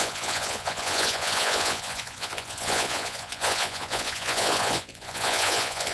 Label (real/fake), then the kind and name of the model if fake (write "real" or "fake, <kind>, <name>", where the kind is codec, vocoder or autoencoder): fake, vocoder, Vocos